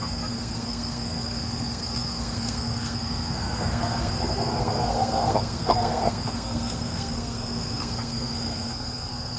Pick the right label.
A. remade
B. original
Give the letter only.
A